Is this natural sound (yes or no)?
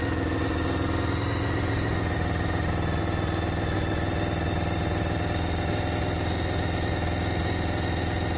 yes